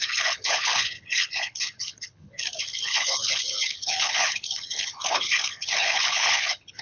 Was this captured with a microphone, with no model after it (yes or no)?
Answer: no